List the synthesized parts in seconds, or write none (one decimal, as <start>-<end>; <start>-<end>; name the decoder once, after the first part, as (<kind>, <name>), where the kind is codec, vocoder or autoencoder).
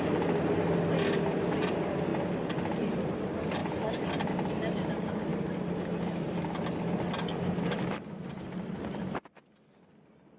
none